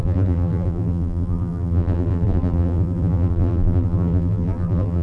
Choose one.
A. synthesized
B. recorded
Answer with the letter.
A